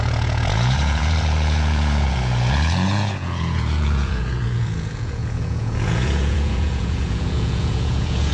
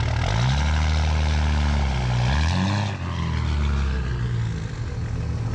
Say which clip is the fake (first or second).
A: first